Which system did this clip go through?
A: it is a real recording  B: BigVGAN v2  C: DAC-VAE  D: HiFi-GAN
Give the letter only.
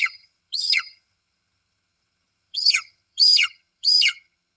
D